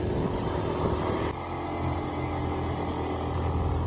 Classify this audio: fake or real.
real